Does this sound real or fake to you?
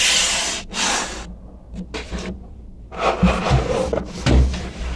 real